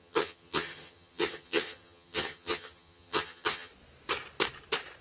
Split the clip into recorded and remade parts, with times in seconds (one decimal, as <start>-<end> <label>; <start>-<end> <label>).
0.0-3.7 remade; 3.7-5.0 recorded